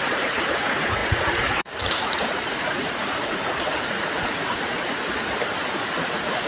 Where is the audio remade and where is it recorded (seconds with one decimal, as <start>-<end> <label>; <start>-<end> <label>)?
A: 0.0-5.0 remade; 5.0-5.6 recorded; 5.6-6.5 remade